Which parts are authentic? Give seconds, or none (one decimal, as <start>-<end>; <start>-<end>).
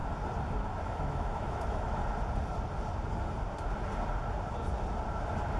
0.0-0.8; 2.0-5.6